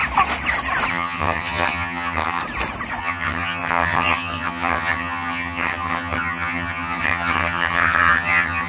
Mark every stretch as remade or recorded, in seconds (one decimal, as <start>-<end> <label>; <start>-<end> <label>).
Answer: 0.0-0.9 recorded; 0.9-2.4 remade; 2.4-3.0 recorded; 3.0-8.7 remade